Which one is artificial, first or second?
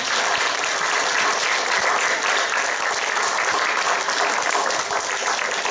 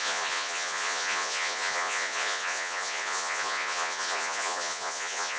second